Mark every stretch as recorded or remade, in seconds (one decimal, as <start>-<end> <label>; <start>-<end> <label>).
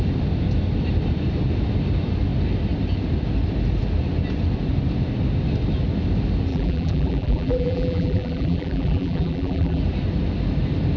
0.0-6.5 recorded; 6.5-9.8 remade; 9.8-11.0 recorded